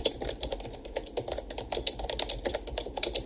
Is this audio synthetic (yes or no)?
no